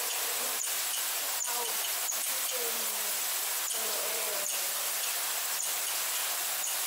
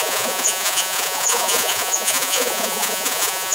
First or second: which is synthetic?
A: second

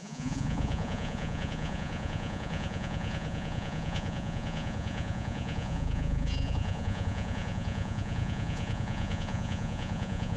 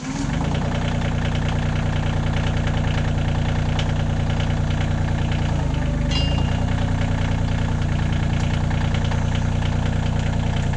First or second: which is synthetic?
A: first